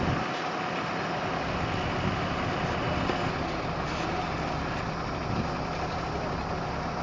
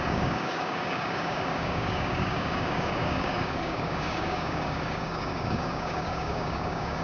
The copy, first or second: second